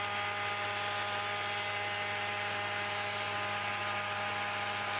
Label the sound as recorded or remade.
recorded